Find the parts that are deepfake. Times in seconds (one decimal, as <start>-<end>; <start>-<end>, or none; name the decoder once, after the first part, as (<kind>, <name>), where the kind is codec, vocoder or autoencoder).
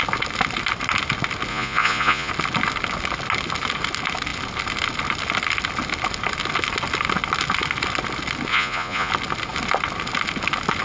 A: 1.5-2.3 (vocoder, Vocos); 8.5-9.1